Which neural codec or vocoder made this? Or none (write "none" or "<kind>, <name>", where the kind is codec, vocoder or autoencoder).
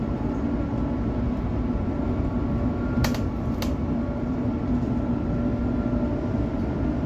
none